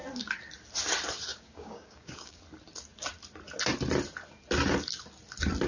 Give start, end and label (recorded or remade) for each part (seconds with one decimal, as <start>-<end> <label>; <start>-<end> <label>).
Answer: 0.0-1.3 recorded; 1.3-2.4 remade; 2.4-5.7 recorded